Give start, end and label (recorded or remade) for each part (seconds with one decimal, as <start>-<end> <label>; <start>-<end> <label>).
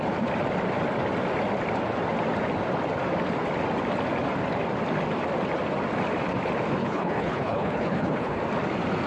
0.0-6.8 recorded; 6.8-8.4 remade; 8.4-9.1 recorded